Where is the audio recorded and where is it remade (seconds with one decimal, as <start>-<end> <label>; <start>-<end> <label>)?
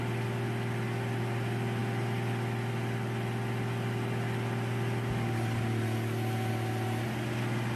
0.0-7.8 recorded